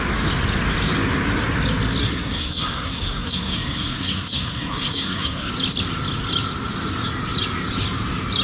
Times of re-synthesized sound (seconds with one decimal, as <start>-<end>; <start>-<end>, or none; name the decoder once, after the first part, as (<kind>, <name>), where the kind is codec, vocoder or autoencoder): 2.0-5.5 (codec, SNAC)